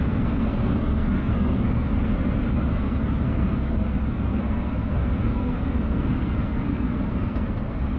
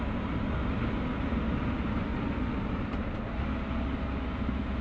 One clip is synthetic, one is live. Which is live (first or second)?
second